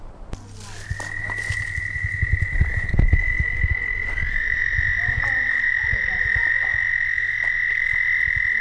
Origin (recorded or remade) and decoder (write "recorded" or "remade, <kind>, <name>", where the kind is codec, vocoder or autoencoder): recorded